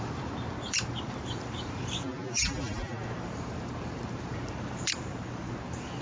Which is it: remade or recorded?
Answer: remade